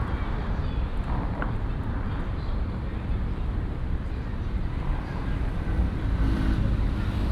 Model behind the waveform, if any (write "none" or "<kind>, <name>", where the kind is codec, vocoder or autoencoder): vocoder, BigVGAN v2